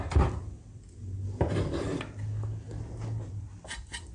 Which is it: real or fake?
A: real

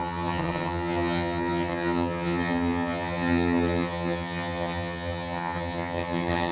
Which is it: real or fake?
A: fake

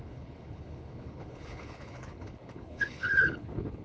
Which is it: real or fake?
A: fake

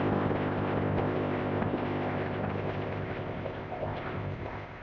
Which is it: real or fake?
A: fake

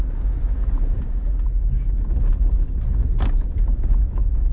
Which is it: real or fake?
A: real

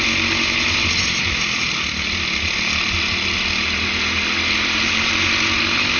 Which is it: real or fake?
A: real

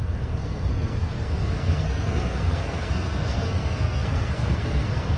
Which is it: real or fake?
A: fake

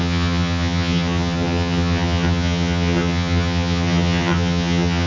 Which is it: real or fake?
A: fake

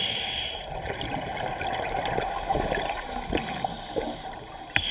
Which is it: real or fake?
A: real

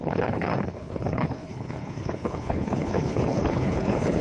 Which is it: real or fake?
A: fake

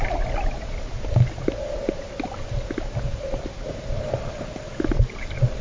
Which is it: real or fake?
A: real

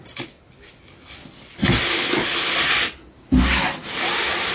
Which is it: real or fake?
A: real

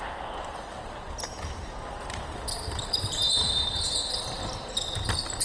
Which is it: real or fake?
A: real